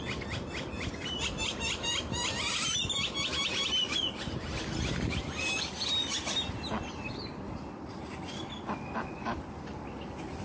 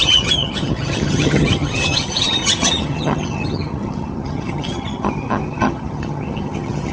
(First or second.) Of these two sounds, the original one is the first